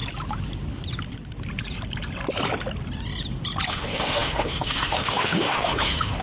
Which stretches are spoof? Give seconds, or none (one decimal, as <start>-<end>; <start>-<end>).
3.7-6.2